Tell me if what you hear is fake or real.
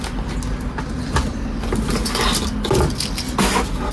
real